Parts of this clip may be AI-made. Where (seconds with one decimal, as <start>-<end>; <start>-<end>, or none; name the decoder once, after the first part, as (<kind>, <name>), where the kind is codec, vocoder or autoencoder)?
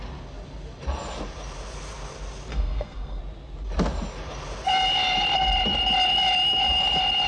2.5-3.2 (codec, SNAC)